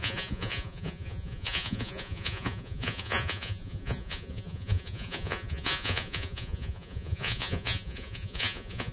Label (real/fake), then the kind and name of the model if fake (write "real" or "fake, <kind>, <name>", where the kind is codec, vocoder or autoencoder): fake, vocoder, Vocos